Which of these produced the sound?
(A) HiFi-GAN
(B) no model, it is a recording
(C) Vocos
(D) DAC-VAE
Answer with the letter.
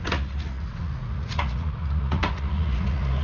C